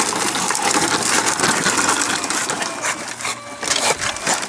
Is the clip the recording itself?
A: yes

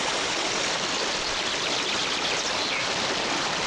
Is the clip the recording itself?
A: yes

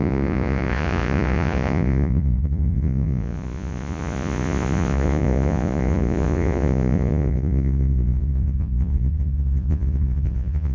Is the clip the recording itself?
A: no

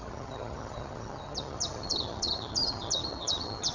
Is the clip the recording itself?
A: no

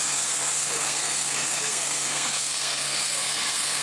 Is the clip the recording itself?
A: no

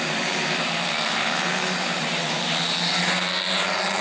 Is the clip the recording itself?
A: no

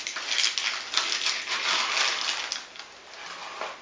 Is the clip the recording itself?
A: yes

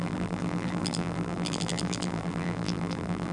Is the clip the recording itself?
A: no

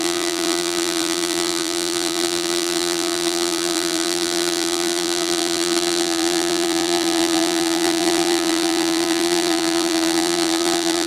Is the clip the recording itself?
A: no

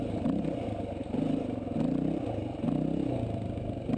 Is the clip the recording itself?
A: yes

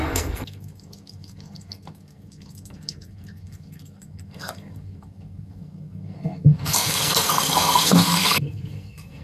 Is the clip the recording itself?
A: no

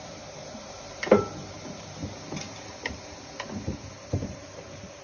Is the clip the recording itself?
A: no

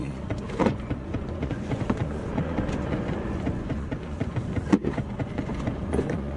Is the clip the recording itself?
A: no